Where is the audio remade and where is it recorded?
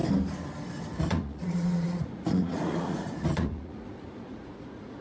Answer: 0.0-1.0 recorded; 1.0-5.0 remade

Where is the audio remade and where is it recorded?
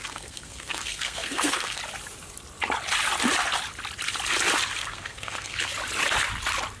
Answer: 0.0-1.8 remade; 1.8-4.8 recorded; 4.8-5.7 remade; 5.7-6.8 recorded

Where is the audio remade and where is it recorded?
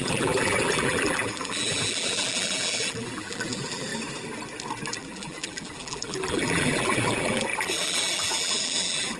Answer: 0.0-3.9 remade; 3.9-4.9 recorded; 4.9-9.2 remade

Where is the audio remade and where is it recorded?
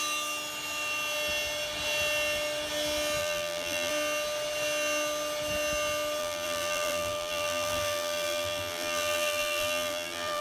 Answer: 0.0-3.2 recorded; 3.2-3.9 remade; 3.9-6.2 recorded; 6.2-10.4 remade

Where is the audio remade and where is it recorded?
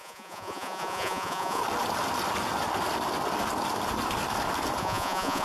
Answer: 0.0-1.6 remade; 1.6-4.8 recorded; 4.8-5.4 remade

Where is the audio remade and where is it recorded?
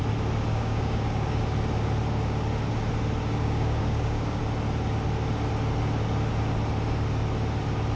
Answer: 0.0-0.5 recorded; 0.5-1.4 remade; 1.4-3.2 recorded; 3.2-4.4 remade; 4.4-8.0 recorded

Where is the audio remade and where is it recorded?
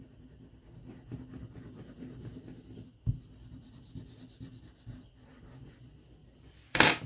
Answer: 0.0-6.2 recorded; 6.2-7.1 remade